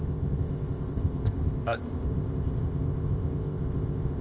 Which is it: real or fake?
fake